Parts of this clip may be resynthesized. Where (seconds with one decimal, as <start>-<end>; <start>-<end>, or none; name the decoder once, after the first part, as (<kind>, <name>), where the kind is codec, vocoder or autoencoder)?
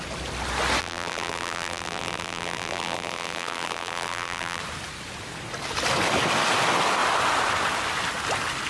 0.8-4.6 (vocoder, BigVGAN v2)